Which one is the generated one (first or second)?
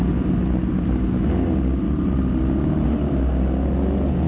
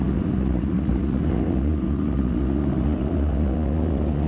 second